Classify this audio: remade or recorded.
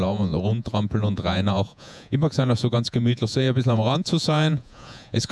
remade